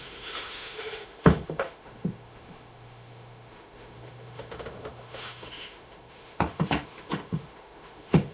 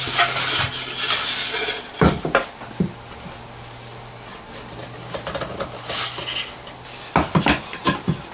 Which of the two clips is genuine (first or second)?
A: second